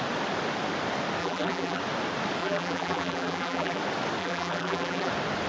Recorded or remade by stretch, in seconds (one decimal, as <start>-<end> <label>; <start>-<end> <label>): 0.0-1.2 recorded; 1.2-1.8 remade; 1.8-2.4 recorded; 2.4-3.8 remade; 3.8-4.2 recorded; 4.2-5.1 remade; 5.1-5.5 recorded